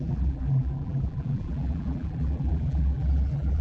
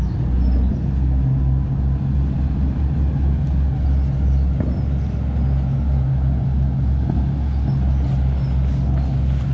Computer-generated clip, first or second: first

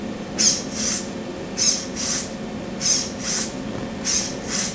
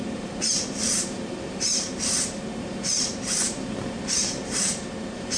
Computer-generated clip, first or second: second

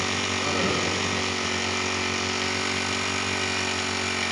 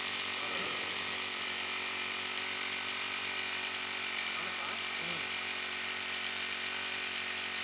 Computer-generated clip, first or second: second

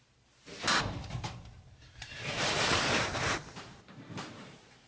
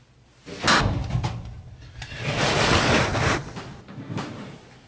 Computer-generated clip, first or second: first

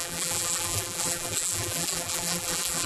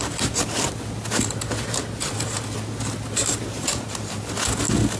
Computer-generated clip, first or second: first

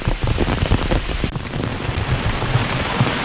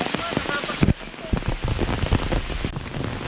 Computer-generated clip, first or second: first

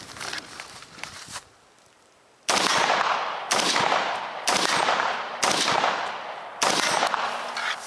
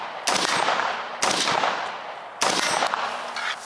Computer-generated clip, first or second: first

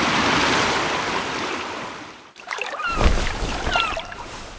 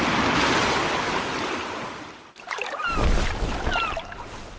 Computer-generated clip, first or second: first